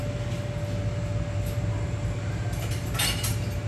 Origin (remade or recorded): recorded